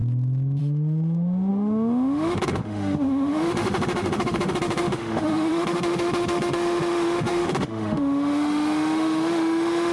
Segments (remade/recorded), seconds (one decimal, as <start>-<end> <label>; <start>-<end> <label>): 0.0-0.6 recorded; 0.6-9.9 remade